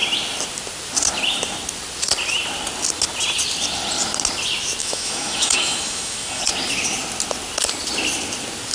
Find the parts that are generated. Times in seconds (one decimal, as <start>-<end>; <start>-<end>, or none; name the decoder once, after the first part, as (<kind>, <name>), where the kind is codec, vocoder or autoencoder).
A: 4.8-6.4 (autoencoder, DAC-VAE)